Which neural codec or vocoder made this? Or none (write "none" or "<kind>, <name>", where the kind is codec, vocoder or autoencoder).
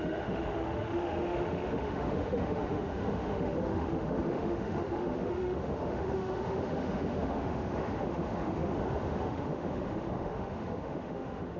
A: autoencoder, DAC-VAE